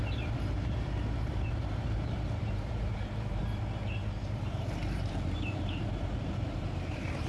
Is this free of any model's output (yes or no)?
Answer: no